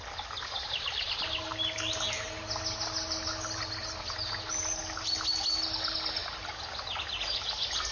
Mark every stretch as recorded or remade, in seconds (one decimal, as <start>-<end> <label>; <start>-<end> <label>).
0.0-7.9 recorded

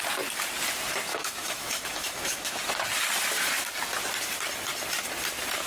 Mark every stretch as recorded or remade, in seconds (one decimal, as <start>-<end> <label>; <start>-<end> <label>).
0.0-1.1 recorded; 1.1-2.6 remade; 2.6-5.7 recorded

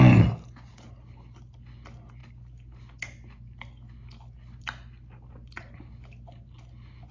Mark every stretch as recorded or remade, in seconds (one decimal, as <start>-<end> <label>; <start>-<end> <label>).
0.0-7.1 recorded

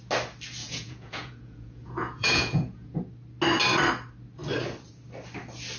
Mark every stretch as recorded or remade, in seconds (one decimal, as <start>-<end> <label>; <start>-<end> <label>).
0.0-0.6 recorded; 0.6-3.0 remade; 3.0-5.8 recorded

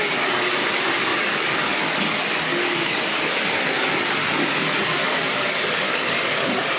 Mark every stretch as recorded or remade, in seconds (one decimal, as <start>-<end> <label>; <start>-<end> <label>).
0.0-1.1 recorded; 1.1-1.9 remade; 1.9-2.5 recorded; 2.5-3.6 remade; 3.6-4.9 recorded; 4.9-6.8 remade

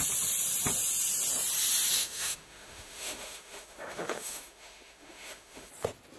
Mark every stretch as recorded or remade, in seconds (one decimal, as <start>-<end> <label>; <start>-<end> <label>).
0.0-2.0 recorded; 2.0-5.7 remade; 5.7-6.2 recorded

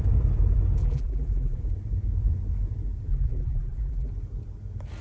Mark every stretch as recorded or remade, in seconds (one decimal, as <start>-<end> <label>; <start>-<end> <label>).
0.0-0.8 recorded; 0.8-1.6 remade; 1.6-3.1 recorded; 3.1-4.1 remade; 4.1-5.0 recorded